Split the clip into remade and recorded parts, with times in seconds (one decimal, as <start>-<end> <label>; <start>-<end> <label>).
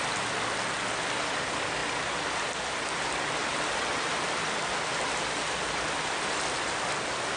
0.0-7.4 recorded